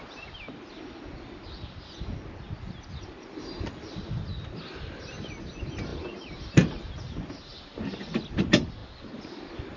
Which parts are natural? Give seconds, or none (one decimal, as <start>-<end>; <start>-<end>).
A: 0.0-9.8